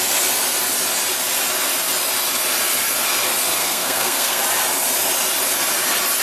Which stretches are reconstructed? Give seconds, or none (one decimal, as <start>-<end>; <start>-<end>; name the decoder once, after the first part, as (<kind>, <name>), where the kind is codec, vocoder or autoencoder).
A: 3.6-4.4 (codec, SNAC)